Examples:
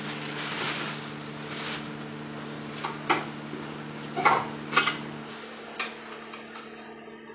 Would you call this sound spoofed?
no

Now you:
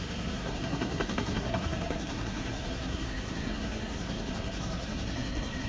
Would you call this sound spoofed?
yes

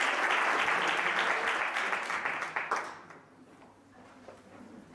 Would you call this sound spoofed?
no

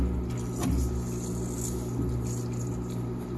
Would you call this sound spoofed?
no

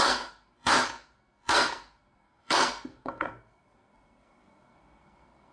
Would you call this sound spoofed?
yes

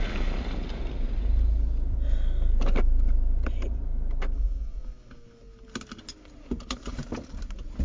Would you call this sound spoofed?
no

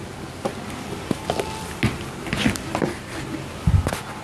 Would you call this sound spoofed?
no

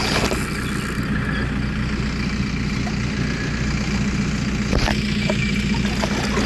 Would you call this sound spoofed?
no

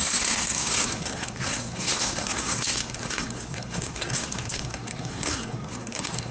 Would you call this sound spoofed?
yes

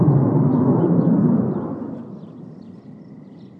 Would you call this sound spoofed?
no